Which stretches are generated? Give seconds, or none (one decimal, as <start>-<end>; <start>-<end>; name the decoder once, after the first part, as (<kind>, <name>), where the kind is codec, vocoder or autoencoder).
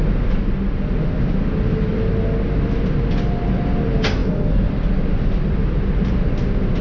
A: none